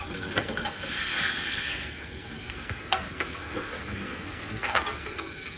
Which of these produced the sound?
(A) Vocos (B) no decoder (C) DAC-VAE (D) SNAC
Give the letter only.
D